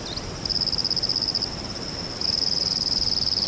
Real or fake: real